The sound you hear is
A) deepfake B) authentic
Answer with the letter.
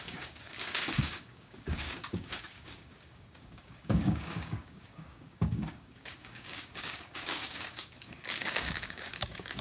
A